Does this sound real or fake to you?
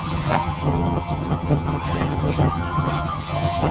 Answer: fake